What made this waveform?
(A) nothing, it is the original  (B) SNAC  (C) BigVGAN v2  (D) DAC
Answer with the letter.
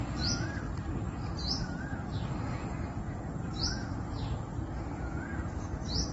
A